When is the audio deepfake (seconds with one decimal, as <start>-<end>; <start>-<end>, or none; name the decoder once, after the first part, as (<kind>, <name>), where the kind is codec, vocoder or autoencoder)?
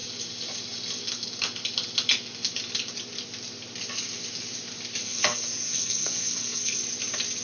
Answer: 5.0-6.8 (codec, SNAC)